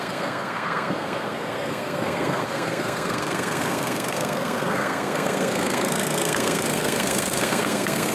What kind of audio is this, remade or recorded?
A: remade